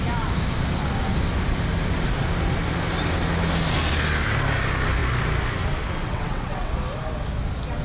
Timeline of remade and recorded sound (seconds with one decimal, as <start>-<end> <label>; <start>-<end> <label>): 0.0-6.0 recorded; 6.0-6.7 remade; 6.7-7.8 recorded